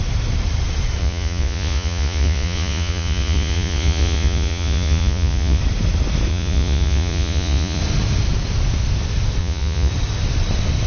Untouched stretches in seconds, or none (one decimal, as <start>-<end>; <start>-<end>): 0.0-1.0; 5.6-6.3; 7.8-9.4; 9.9-10.9